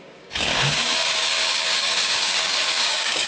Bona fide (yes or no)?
no